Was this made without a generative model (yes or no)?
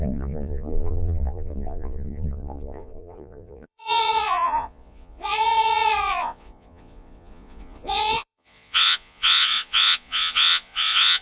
no